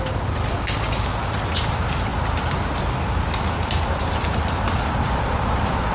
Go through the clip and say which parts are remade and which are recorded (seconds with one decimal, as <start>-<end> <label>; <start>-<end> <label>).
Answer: 0.0-2.1 recorded; 2.1-5.9 remade